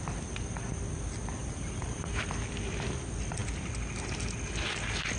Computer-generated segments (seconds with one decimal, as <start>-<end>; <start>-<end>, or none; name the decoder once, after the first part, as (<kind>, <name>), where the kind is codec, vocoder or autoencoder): 1.4-2.2 (vocoder, BigVGAN v2)